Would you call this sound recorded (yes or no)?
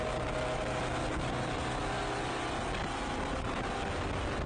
yes